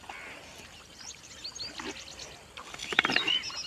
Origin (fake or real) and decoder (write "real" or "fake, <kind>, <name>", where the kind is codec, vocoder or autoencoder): real